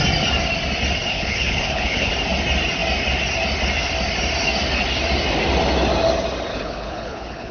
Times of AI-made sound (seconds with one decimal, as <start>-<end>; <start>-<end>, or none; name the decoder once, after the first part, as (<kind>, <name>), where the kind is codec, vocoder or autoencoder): 1.1-2.1 (codec, HILCodec); 6.5-7.5